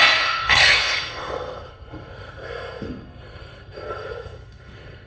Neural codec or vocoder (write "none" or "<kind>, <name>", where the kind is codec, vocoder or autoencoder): codec, SNAC